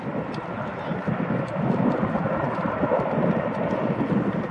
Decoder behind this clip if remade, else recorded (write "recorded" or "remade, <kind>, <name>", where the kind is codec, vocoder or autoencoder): recorded